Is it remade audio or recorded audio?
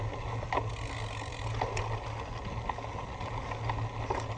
recorded